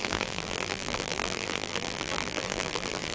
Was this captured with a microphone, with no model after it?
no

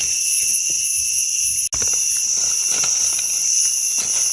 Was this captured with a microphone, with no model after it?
yes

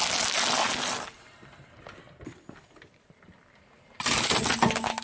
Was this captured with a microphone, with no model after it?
yes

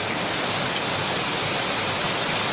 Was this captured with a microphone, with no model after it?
yes